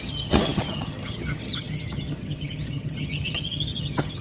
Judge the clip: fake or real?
fake